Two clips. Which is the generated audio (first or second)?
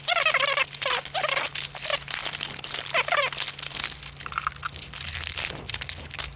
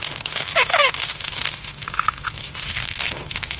second